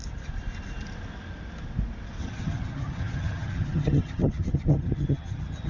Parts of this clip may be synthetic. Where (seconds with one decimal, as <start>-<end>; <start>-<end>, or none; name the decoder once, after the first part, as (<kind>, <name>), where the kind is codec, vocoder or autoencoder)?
2.2-5.7 (vocoder, HiFi-GAN)